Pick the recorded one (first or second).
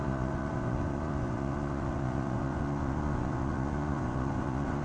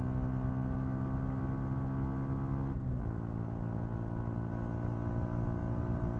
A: second